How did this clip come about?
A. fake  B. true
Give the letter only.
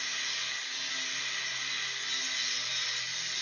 B